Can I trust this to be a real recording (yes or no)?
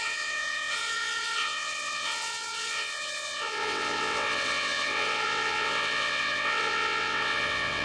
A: no